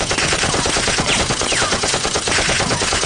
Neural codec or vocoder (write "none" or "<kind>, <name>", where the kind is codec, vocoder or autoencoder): vocoder, Vocos